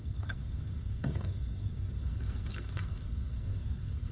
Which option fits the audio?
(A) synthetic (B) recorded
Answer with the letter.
A